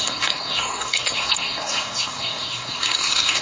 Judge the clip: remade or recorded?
remade